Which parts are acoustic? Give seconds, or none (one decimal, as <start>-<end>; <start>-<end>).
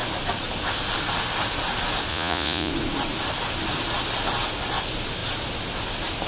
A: 0.0-2.1; 2.7-6.3